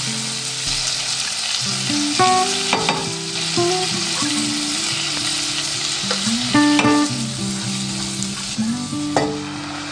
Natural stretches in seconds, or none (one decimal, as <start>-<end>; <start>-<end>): 0.0-9.9